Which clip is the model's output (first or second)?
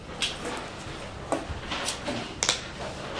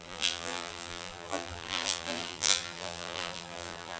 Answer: second